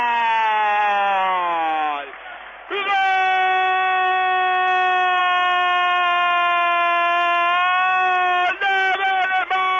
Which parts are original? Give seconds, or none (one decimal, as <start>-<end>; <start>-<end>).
0.0-9.8